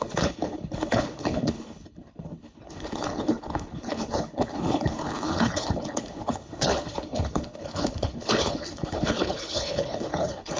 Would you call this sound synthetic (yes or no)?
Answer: yes